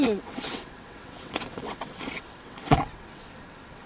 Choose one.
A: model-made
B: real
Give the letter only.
A